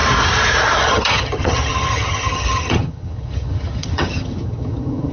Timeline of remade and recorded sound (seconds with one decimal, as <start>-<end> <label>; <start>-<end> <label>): 0.0-0.8 recorded; 0.8-5.1 remade